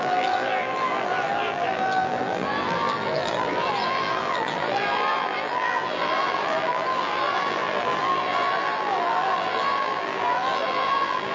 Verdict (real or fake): fake